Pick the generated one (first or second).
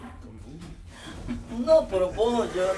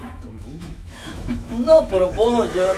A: second